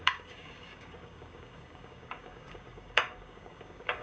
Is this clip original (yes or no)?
no